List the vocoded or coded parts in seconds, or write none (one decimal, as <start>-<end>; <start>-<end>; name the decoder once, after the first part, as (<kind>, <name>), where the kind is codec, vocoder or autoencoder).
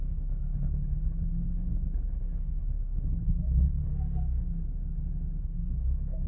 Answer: 0.0-3.9 (codec, HILCodec); 5.4-6.3